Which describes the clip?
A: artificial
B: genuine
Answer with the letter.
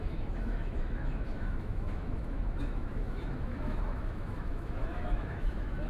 A